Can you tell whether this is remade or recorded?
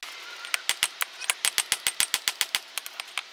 recorded